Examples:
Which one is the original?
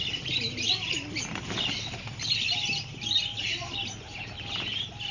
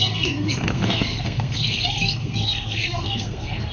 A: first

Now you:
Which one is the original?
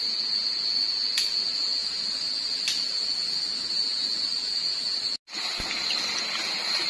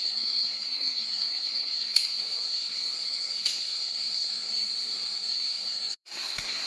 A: first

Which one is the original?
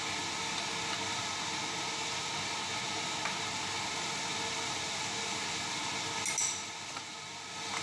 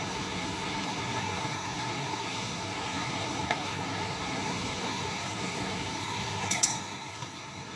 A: first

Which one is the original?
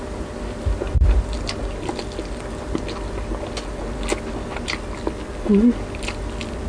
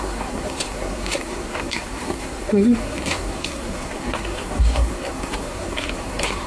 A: first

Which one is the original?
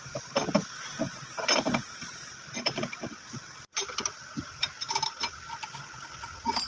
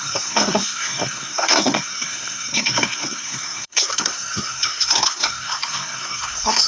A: first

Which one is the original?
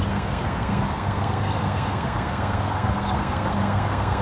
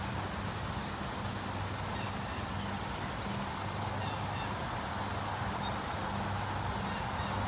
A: second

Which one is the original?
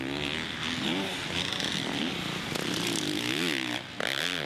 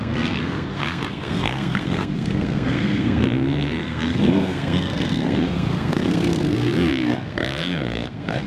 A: first